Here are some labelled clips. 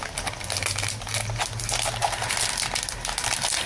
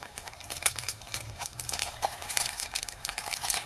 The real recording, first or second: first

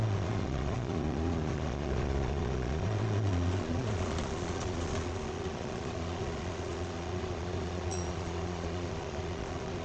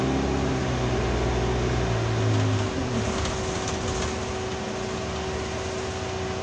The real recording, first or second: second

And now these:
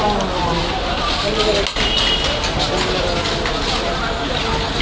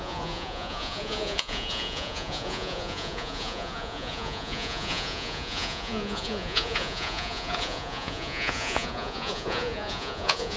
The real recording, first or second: first